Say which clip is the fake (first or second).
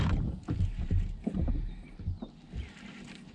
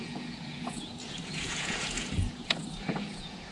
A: second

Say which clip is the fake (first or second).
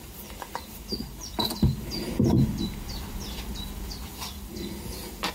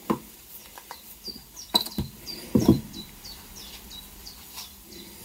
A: second